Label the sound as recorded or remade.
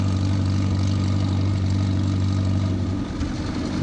recorded